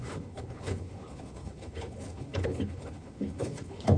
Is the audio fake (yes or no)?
yes